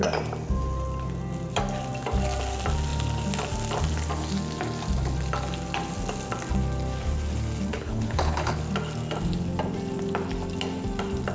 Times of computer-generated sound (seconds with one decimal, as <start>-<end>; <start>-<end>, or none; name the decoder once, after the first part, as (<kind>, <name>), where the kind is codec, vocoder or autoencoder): 7.7-8.6 (codec, HILCodec)